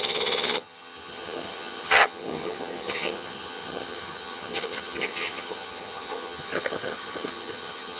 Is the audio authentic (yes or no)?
no